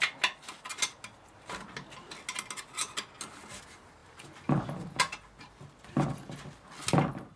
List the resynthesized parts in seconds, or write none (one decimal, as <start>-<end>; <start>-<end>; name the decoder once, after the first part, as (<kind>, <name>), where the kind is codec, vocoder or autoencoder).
none